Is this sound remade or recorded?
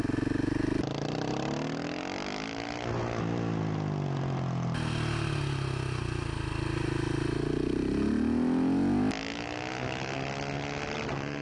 recorded